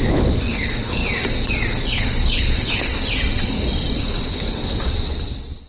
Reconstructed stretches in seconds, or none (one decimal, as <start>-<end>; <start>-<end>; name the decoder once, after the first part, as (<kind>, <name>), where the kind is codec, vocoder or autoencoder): 0.0-1.0 (codec, HILCodec); 1.7-2.9; 4.0-4.6